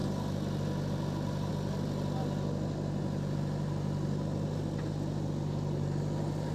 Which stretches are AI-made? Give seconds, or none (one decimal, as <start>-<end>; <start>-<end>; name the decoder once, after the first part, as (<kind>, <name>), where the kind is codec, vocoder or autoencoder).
none